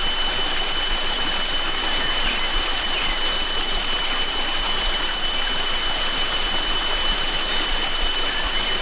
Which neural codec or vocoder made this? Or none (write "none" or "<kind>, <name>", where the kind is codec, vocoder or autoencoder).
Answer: vocoder, BigVGAN v2